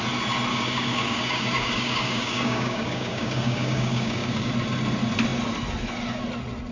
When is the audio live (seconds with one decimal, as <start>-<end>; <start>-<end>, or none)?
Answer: 0.0-0.5; 4.5-6.7